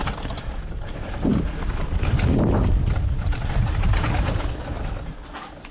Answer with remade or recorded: recorded